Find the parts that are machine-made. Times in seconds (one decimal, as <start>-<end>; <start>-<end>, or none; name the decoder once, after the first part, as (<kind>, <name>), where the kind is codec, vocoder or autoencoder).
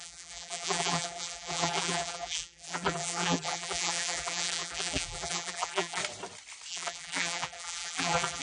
0.0-6.0 (vocoder, BigVGAN v2); 6.7-8.4